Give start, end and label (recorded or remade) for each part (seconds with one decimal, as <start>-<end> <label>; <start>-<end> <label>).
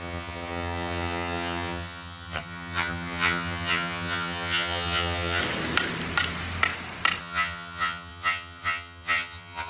0.0-5.4 remade; 5.4-7.2 recorded; 7.2-9.7 remade